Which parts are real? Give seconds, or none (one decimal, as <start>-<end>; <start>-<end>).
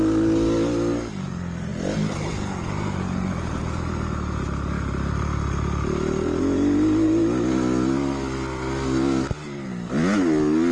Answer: 0.0-10.7